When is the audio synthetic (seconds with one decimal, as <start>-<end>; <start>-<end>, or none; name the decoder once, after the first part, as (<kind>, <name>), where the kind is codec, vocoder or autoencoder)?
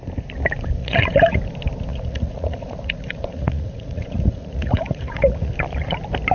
0.8-1.4 (vocoder, Vocos); 1.9-5.5